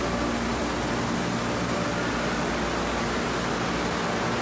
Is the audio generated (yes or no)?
no